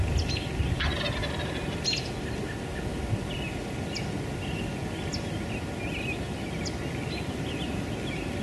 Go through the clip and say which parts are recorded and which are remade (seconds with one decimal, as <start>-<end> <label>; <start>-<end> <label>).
0.0-8.4 recorded